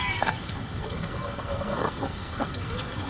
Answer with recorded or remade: remade